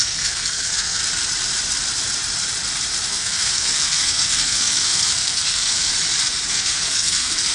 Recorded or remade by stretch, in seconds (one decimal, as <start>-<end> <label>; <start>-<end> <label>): 0.0-1.0 remade; 1.0-3.1 recorded; 3.1-5.9 remade; 5.9-6.5 recorded; 6.5-7.5 remade